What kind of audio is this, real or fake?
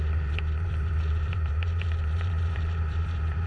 fake